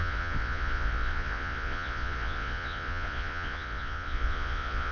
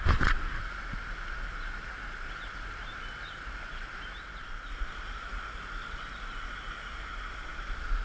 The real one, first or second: second